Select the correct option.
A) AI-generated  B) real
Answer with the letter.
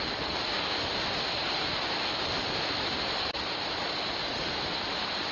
B